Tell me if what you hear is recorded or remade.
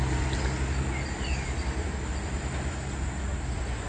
recorded